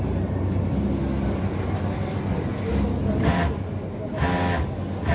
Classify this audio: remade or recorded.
recorded